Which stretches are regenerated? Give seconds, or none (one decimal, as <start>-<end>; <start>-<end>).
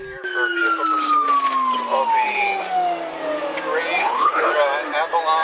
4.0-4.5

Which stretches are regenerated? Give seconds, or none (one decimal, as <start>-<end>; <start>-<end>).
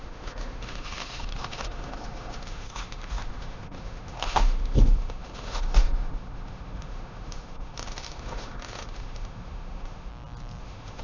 0.0-10.1; 10.6-11.0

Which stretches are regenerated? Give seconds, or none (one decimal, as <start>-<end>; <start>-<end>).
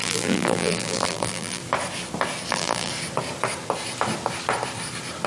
0.0-1.6; 2.5-2.9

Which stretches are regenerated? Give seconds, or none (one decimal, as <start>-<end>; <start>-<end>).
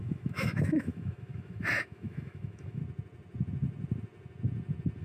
0.0-2.8